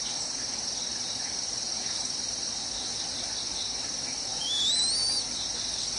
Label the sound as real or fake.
real